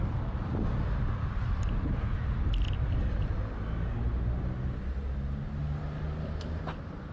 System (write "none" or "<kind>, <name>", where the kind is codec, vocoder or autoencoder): none